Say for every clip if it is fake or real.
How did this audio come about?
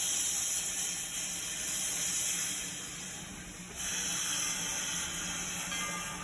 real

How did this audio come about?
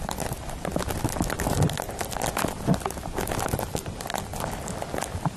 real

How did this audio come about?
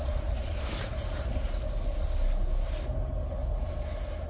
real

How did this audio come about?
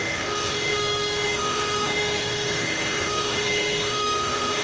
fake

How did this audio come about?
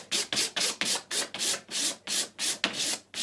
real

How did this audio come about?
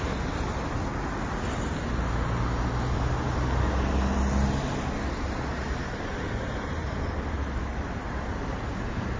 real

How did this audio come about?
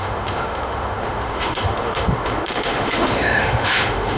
fake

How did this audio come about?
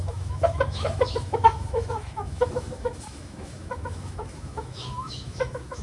fake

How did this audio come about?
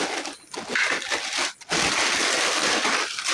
real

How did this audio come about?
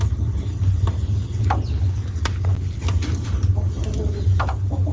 real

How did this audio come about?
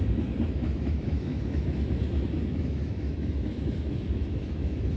fake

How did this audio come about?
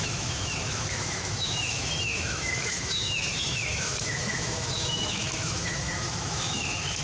fake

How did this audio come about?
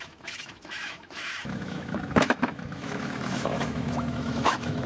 fake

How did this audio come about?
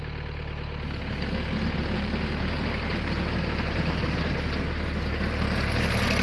real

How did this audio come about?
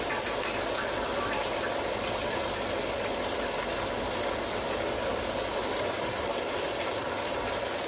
real